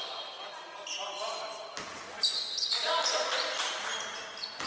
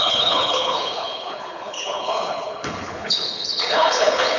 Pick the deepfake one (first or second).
second